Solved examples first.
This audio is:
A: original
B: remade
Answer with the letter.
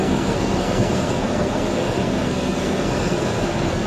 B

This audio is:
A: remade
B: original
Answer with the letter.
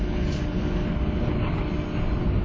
B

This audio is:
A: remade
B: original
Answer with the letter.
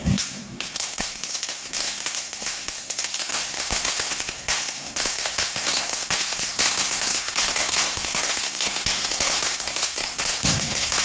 A